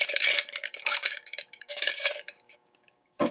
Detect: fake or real fake